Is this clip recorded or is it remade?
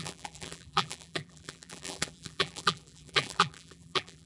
remade